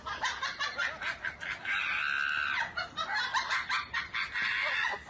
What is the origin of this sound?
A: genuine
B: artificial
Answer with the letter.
A